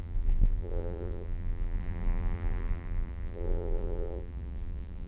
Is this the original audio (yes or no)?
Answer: no